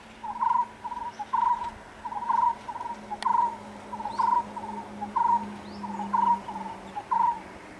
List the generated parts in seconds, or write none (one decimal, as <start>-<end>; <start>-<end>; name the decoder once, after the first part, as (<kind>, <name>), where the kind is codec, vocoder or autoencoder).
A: none

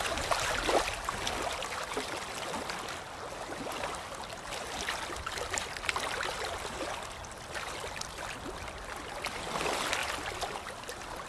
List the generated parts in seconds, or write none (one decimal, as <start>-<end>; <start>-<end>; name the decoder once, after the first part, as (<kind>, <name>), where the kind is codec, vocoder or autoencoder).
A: none

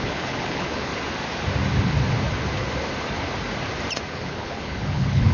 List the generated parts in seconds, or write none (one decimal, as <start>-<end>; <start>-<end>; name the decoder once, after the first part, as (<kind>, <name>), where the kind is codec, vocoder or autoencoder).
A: 0.0-0.9 (codec, HILCodec); 4.1-5.3

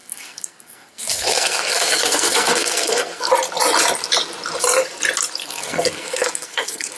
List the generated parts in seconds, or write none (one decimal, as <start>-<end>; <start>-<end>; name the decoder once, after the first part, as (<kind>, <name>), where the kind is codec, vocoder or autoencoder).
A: 0.0-3.3 (codec, SNAC); 5.4-7.0

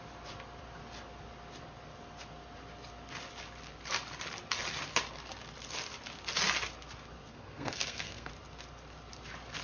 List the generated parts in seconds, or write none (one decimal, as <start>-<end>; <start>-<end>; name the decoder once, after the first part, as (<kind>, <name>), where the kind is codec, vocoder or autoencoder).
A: 7.3-8.3 (codec, SNAC)

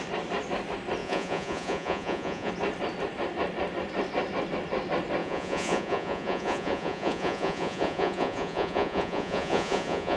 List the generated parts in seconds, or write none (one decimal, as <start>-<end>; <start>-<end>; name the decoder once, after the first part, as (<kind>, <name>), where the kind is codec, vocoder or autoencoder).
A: 1.0-2.5 (vocoder, Vocos); 5.2-10.2

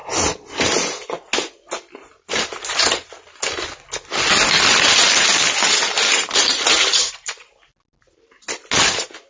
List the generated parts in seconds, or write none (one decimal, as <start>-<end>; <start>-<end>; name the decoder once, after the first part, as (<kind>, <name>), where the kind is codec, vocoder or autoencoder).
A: none